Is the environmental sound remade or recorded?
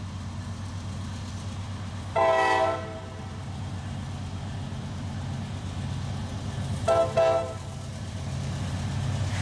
recorded